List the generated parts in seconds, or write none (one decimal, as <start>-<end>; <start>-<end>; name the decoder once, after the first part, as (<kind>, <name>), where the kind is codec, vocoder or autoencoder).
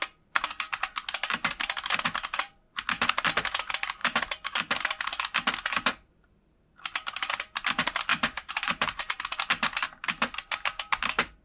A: 8.1-9.2 (vocoder, BigVGAN v2)